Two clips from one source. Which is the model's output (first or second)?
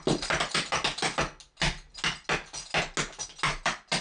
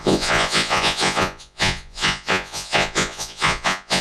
second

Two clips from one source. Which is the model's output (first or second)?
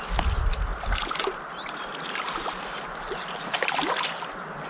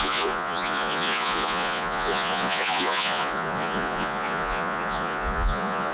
second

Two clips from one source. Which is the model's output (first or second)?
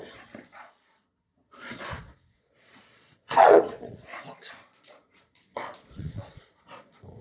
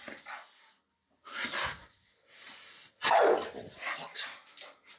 first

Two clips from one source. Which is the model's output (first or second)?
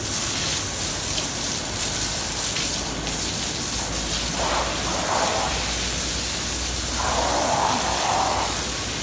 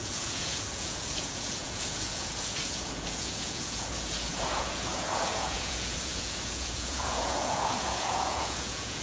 second